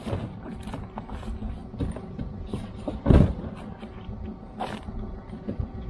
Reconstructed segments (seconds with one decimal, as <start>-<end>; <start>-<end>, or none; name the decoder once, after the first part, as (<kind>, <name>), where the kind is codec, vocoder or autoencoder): none